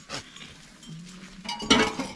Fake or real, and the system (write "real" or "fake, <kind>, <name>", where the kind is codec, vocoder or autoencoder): real